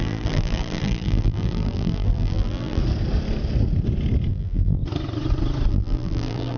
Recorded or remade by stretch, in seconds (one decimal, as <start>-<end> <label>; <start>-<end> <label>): 0.0-2.8 remade; 2.8-4.3 recorded; 4.3-4.8 remade; 4.8-5.7 recorded; 5.7-6.6 remade